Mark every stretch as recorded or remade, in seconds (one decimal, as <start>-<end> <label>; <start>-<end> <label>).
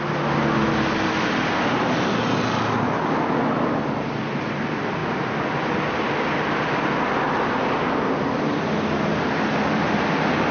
0.0-10.5 recorded